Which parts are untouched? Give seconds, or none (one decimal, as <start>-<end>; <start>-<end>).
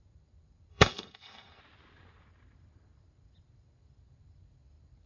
0.0-0.7; 1.6-5.1